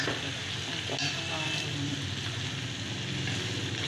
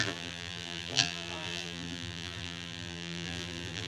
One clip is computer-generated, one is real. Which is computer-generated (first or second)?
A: second